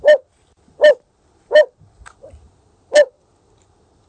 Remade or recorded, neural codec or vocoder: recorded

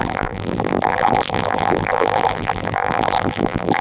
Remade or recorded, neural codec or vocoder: remade, vocoder, BigVGAN v2